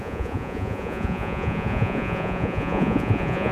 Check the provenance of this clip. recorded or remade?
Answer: remade